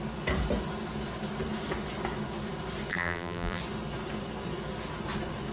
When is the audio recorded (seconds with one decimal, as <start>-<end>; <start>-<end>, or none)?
0.0-2.9; 3.6-5.5